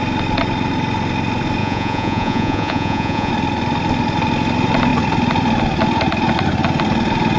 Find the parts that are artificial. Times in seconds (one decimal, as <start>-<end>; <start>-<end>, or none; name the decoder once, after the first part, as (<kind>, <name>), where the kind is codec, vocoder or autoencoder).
1.6-3.3 (vocoder, Vocos)

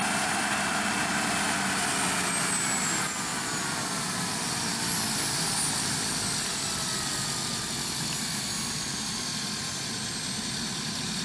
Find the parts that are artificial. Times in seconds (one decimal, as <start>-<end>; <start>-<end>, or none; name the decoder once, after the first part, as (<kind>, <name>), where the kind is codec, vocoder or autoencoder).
none